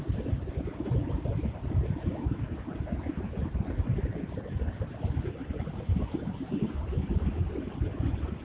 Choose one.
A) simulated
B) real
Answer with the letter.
A